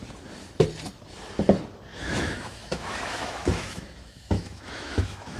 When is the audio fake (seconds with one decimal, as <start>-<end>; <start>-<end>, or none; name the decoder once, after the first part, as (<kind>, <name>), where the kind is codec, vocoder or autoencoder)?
1.9-5.4 (autoencoder, DAC-VAE)

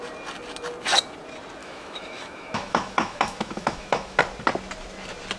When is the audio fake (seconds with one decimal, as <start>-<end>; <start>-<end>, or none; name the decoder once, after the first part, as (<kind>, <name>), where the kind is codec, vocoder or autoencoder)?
1.6-4.2 (autoencoder, DAC-VAE)

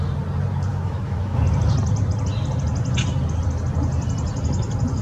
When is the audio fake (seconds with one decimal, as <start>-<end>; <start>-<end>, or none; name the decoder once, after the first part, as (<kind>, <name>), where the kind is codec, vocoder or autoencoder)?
0.7-1.4 (autoencoder, DAC-VAE)